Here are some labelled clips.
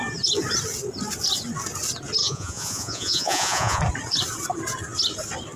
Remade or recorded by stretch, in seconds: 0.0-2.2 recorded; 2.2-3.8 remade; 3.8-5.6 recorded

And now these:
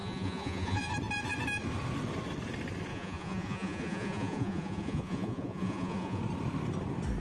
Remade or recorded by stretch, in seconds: 0.0-0.9 remade; 0.9-2.9 recorded; 2.9-6.2 remade; 6.2-7.2 recorded

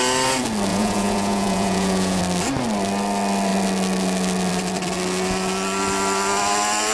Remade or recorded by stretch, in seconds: 0.0-0.7 recorded; 0.7-2.2 remade; 2.2-6.9 recorded

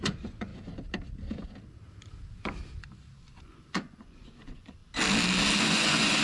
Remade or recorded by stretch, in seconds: 0.0-0.5 remade; 0.5-3.4 recorded; 3.4-4.8 remade; 4.8-5.6 recorded; 5.6-6.2 remade

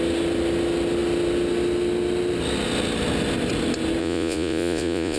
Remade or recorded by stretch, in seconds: 0.0-4.0 recorded; 4.0-5.2 remade

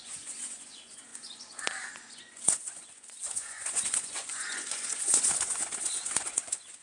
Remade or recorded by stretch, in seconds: 0.0-6.8 remade

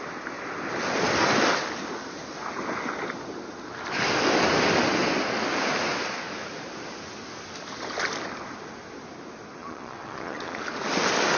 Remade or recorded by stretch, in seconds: 0.0-9.6 recorded; 9.6-10.6 remade; 10.6-11.4 recorded

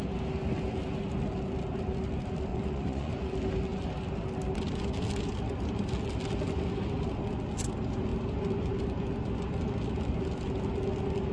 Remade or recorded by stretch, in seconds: 0.0-2.5 recorded; 2.5-3.1 remade; 3.1-11.3 recorded